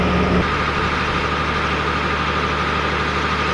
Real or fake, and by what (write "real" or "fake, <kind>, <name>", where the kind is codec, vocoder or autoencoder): real